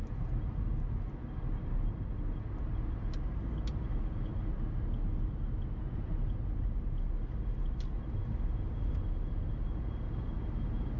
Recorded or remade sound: recorded